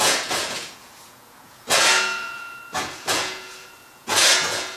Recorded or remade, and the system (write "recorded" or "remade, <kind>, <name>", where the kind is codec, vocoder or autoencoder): remade, vocoder, Vocos